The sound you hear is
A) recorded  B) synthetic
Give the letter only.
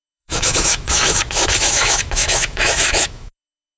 B